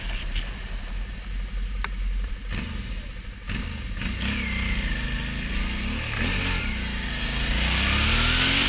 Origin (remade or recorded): recorded